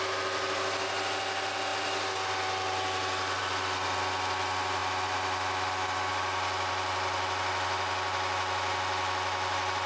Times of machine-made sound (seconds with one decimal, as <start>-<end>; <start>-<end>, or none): none